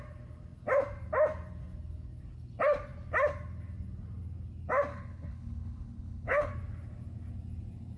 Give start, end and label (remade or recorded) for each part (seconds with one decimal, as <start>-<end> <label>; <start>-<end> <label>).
0.0-4.9 recorded; 4.9-6.5 remade; 6.5-8.0 recorded